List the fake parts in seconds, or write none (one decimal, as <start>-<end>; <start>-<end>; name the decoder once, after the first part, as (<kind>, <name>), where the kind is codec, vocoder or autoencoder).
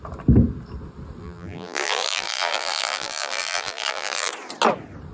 1.2-4.3 (vocoder, BigVGAN v2)